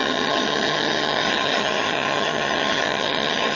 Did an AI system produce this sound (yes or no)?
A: yes